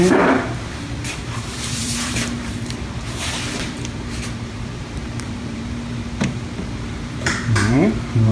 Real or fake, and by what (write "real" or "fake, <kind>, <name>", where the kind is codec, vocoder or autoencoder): fake, vocoder, BigVGAN v2